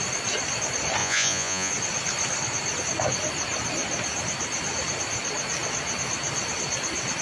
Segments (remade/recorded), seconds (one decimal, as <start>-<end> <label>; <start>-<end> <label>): 0.0-1.0 recorded; 1.0-1.7 remade; 1.7-7.2 recorded